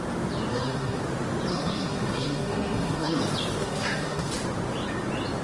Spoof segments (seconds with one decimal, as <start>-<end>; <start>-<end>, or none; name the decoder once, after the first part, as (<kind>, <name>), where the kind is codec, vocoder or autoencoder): 0.5-1.0 (codec, SNAC); 1.5-3.2; 3.6-4.3